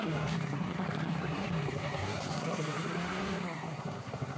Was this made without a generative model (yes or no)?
no